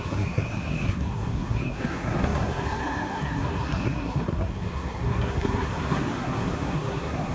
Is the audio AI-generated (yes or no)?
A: yes